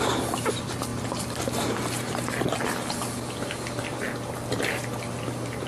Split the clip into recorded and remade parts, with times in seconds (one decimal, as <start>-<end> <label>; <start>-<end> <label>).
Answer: 0.0-5.7 recorded